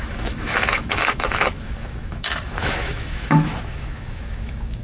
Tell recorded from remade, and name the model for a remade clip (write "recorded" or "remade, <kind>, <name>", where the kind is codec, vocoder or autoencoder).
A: remade, autoencoder, DAC-VAE